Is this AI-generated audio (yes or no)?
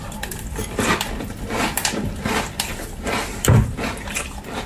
yes